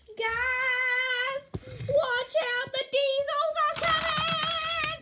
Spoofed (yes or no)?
no